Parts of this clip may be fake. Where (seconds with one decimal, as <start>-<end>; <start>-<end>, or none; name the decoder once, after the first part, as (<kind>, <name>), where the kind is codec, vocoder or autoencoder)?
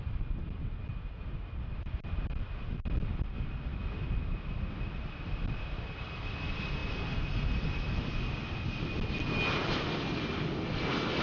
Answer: none